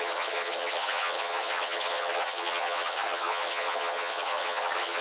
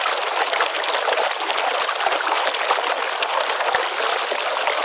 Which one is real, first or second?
second